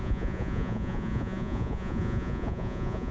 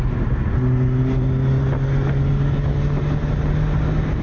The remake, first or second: first